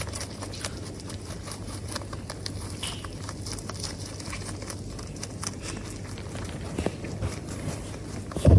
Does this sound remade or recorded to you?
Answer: recorded